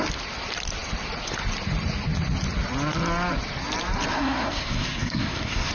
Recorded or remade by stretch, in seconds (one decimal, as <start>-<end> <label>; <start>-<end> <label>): 0.0-4.1 recorded; 4.1-5.7 remade